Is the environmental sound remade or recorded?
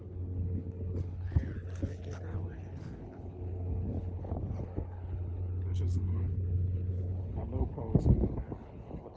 remade